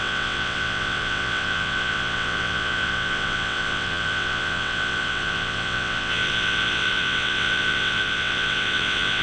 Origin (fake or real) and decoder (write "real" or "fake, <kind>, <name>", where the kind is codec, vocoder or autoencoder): fake, vocoder, WaveNeXt